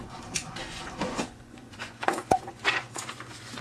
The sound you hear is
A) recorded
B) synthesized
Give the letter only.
B